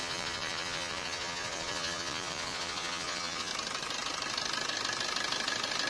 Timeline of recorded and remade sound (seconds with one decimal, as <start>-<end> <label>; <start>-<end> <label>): 0.0-3.5 remade; 3.5-5.9 recorded